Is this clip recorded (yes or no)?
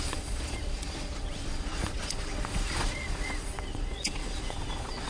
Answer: no